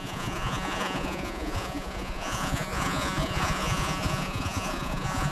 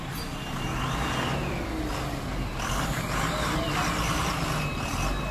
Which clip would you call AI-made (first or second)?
first